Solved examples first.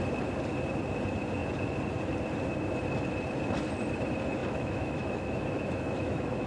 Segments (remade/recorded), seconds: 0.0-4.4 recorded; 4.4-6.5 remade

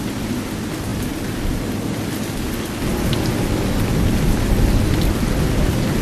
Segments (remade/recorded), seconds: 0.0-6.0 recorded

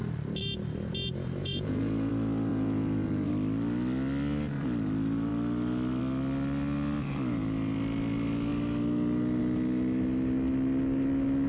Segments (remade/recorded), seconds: 0.0-1.4 recorded; 1.4-2.1 remade; 2.1-2.5 recorded; 2.5-3.3 remade; 3.3-11.5 recorded